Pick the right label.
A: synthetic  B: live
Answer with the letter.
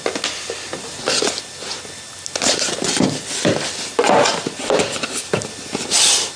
B